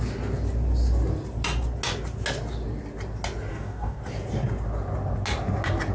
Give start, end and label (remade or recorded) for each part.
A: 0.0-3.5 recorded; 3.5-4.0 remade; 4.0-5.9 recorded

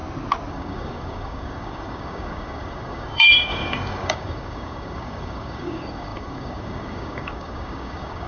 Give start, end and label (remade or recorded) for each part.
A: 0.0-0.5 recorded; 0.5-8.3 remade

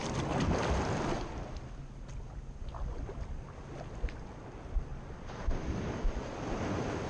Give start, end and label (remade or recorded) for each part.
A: 0.0-7.1 recorded

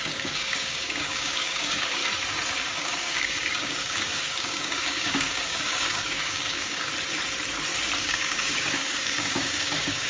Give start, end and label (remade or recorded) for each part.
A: 0.0-2.0 remade; 2.0-2.5 recorded; 2.5-6.9 remade; 6.9-8.0 recorded; 8.0-10.1 remade